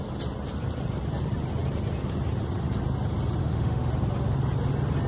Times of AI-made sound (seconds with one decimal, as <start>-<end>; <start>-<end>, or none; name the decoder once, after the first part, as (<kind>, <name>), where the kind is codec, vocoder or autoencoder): 3.4-3.9 (autoencoder, DAC-VAE)